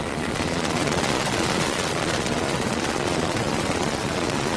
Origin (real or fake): fake